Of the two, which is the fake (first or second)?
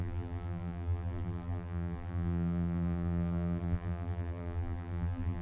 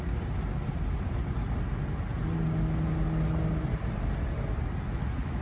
first